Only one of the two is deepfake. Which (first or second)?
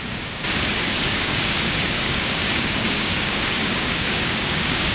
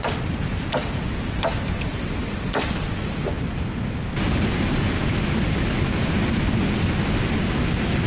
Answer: first